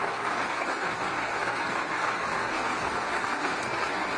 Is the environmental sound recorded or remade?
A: remade